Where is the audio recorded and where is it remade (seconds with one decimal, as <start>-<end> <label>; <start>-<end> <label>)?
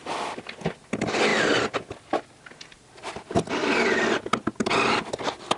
0.0-5.6 recorded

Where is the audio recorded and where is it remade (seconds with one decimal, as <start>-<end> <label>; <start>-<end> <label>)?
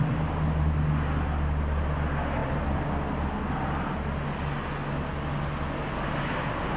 0.0-6.8 recorded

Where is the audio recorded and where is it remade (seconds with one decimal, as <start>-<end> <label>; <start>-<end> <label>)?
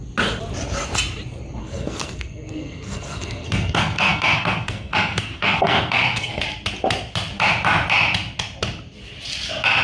0.0-1.6 recorded; 1.6-6.4 remade; 6.4-9.8 recorded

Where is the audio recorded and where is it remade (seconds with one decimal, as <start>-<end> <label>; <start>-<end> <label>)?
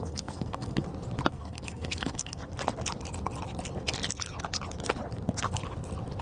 0.0-0.8 remade; 0.8-1.3 recorded; 1.3-2.4 remade; 2.4-6.2 recorded